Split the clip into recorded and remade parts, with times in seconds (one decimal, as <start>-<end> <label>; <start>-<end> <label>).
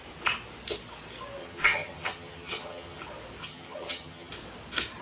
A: 0.0-1.4 recorded; 1.4-3.0 remade; 3.0-3.4 recorded; 3.4-4.3 remade; 4.3-5.0 recorded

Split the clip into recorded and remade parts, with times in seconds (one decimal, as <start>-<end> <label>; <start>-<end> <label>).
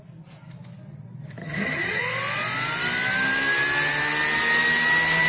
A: 0.0-1.4 recorded; 1.4-2.0 remade; 2.0-5.3 recorded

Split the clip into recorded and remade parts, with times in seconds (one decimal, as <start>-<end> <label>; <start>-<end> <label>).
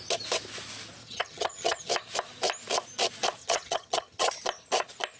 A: 0.0-1.0 recorded; 1.0-1.9 remade; 1.9-3.4 recorded; 3.4-4.3 remade; 4.3-5.2 recorded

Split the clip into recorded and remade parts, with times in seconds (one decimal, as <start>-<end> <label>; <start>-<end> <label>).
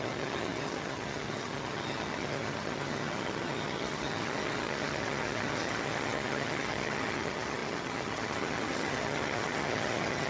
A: 0.0-10.3 remade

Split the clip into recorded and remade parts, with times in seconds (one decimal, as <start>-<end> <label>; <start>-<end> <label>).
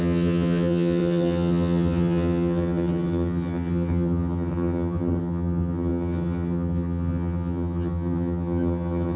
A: 0.0-9.2 remade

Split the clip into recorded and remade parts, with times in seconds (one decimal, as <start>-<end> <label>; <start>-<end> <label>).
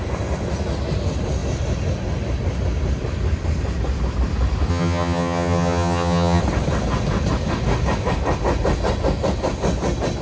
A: 0.0-4.7 recorded; 4.7-6.4 remade; 6.4-10.2 recorded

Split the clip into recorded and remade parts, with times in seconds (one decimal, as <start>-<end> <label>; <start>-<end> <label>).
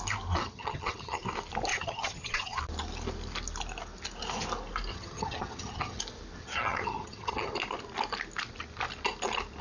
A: 0.0-0.4 recorded; 0.4-1.2 remade; 1.2-1.7 recorded; 1.7-2.6 remade; 2.6-4.9 recorded; 4.9-6.0 remade; 6.0-6.4 recorded; 6.4-7.5 remade; 7.5-9.6 recorded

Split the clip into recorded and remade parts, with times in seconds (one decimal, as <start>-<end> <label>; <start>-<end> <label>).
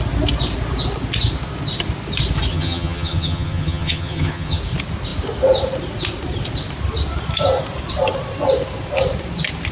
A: 0.0-2.5 recorded; 2.5-4.6 remade; 4.6-9.7 recorded